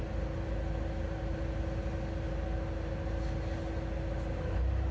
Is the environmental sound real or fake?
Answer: real